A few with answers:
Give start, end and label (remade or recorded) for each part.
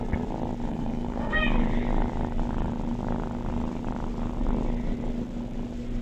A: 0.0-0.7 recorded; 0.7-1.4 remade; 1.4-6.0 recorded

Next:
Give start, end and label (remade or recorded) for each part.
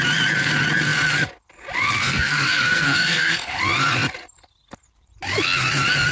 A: 0.0-2.0 recorded; 2.0-3.6 remade; 3.6-6.1 recorded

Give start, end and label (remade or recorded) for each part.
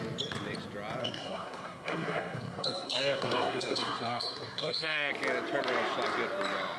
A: 0.0-1.0 recorded; 1.0-5.1 remade; 5.1-6.8 recorded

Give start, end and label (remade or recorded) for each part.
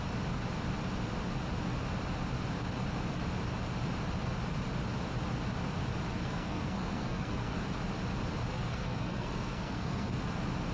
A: 0.0-6.1 recorded; 6.1-7.6 remade; 7.6-8.5 recorded; 8.5-10.2 remade; 10.2-10.7 recorded